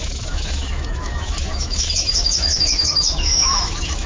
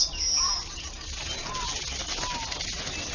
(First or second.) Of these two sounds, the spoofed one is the first